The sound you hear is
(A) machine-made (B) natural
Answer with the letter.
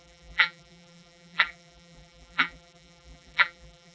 A